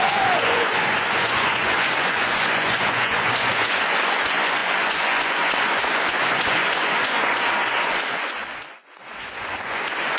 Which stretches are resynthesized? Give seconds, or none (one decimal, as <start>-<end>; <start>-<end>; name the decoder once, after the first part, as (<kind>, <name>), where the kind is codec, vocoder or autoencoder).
0.0-10.2 (vocoder, Vocos)